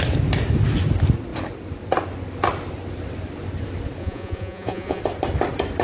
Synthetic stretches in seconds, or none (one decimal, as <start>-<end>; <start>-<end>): 4.0-5.0